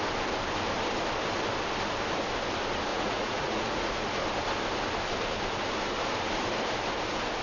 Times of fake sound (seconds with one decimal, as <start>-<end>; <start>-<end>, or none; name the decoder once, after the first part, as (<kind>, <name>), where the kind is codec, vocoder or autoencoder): 2.9-4.0 (vocoder, Vocos)